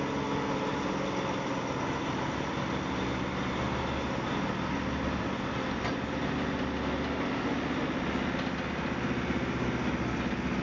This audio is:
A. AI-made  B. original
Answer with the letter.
B